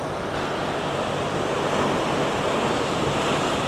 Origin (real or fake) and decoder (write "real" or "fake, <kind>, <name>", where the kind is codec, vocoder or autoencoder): real